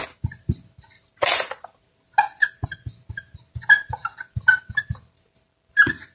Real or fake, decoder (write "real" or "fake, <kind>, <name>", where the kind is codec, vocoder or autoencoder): real